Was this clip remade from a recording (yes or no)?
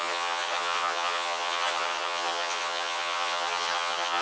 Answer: yes